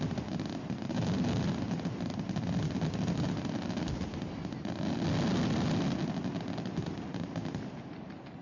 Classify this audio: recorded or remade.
recorded